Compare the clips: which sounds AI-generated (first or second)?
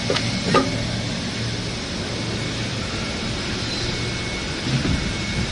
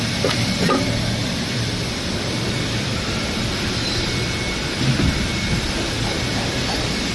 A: second